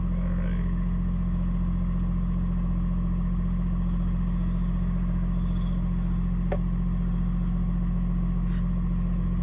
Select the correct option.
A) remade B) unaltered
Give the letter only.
B